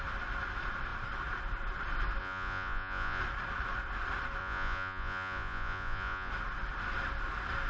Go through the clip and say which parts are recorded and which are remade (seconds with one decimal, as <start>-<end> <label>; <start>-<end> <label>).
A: 0.0-2.2 recorded; 2.2-3.2 remade; 3.2-4.4 recorded; 4.4-6.3 remade; 6.3-7.7 recorded